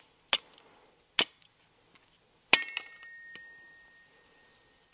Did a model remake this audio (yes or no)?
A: no